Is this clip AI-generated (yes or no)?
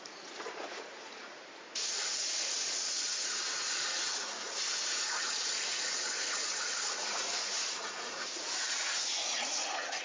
yes